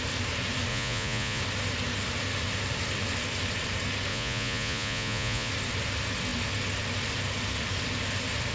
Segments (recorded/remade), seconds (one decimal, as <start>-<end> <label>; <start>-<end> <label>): 0.0-0.7 recorded; 0.7-1.4 remade; 1.4-4.1 recorded; 4.1-5.5 remade; 5.5-8.5 recorded